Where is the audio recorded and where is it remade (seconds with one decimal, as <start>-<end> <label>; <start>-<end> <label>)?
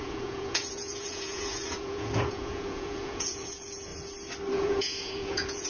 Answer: 0.0-3.9 remade; 3.9-4.5 recorded; 4.5-5.7 remade